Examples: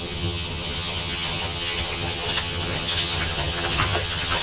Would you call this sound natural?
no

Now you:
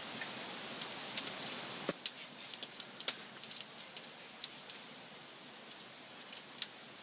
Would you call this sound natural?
yes